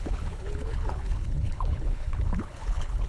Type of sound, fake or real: fake